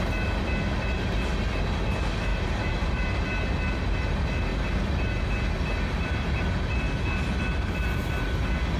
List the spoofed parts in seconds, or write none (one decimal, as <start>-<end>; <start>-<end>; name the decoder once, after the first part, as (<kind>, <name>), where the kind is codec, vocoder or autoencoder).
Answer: 2.3-3.1 (vocoder, BigVGAN v2); 4.5-5.1